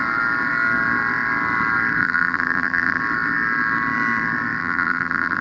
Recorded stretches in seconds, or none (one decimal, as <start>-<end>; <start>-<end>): 0.0-2.0; 3.0-4.6